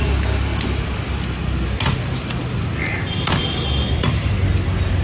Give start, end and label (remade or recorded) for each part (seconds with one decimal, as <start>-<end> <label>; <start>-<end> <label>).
0.0-5.0 recorded